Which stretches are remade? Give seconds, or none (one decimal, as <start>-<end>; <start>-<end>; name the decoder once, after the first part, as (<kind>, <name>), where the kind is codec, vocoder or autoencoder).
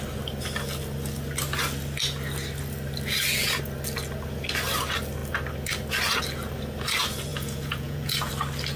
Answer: 7.3-8.3 (vocoder, Vocos)